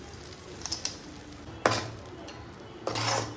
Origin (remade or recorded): recorded